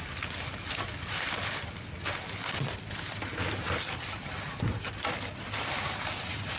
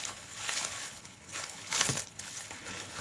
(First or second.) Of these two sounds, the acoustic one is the first